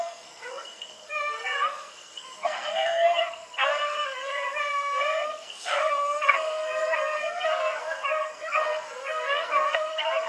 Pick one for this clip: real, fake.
fake